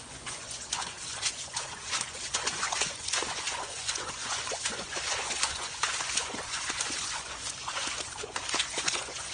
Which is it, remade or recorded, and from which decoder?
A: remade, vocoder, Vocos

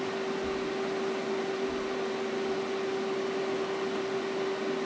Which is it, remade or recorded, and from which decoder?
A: recorded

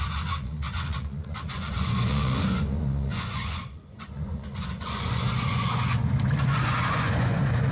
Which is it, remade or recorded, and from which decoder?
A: remade, vocoder, Vocos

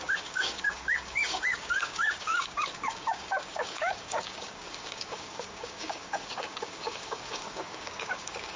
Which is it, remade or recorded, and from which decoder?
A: remade, codec, DAC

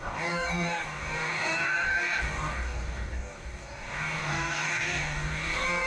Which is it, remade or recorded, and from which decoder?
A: remade, codec, DAC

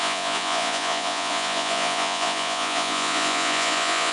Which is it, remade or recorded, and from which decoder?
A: remade, vocoder, Vocos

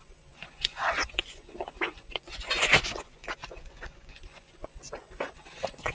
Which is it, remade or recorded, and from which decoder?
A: remade, vocoder, Vocos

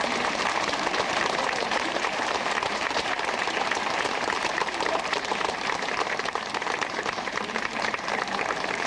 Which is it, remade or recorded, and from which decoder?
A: remade, vocoder, BigVGAN v2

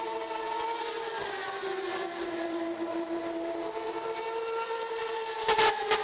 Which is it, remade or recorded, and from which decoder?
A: recorded